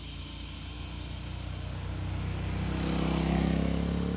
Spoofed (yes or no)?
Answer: no